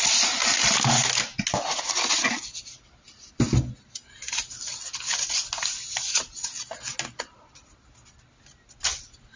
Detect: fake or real real